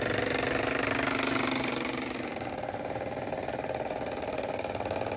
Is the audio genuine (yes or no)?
yes